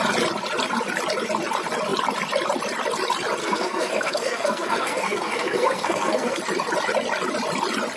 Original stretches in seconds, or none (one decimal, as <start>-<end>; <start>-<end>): 0.0-3.4; 6.4-8.0